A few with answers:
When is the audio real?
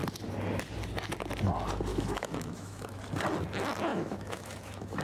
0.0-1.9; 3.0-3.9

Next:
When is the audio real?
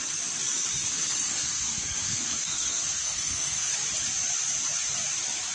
0.0-0.8; 3.7-5.5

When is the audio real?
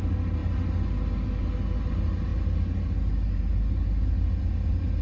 0.0-5.0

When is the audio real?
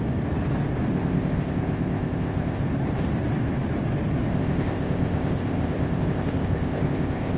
0.0-0.9; 2.6-4.3